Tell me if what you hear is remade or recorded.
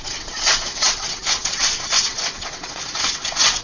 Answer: remade